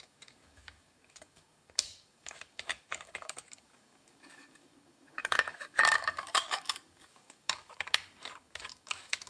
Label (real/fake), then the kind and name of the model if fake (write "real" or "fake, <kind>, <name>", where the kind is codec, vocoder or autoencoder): fake, codec, DAC